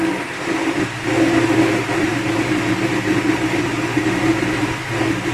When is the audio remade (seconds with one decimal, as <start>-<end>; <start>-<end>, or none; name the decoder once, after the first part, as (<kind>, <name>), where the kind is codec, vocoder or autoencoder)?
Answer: 2.0-4.2 (vocoder, BigVGAN v2)